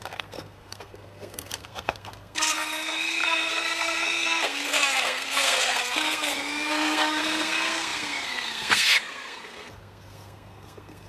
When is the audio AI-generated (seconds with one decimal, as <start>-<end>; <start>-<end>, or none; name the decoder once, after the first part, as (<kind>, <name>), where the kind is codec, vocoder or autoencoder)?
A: 0.0-11.1 (codec, SNAC)